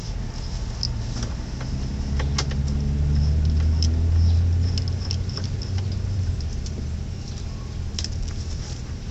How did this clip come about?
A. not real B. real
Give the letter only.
B